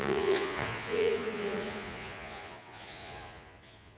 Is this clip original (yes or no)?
no